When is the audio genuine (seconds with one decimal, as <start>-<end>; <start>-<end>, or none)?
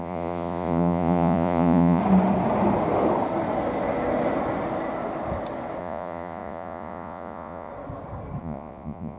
2.0-5.8; 7.7-8.4